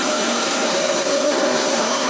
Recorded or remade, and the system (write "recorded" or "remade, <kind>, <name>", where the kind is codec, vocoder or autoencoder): remade, codec, SNAC